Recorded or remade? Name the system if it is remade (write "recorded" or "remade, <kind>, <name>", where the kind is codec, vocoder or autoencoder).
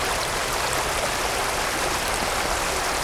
remade, vocoder, BigVGAN v2